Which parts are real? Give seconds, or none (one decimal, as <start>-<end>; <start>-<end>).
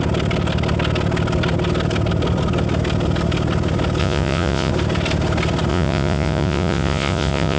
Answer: 0.0-4.0; 4.7-5.7